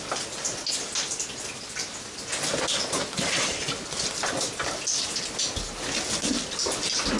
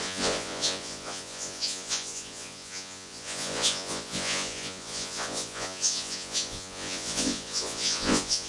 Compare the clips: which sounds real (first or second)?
first